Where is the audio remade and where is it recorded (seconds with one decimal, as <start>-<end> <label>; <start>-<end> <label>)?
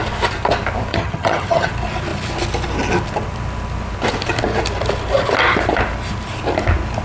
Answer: 0.0-0.9 recorded; 0.9-1.7 remade; 1.7-7.0 recorded